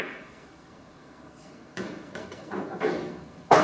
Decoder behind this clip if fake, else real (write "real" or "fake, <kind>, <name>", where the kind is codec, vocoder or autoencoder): fake, codec, SNAC